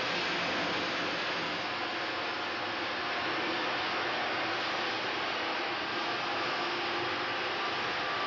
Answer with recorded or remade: recorded